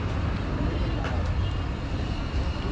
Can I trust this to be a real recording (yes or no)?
yes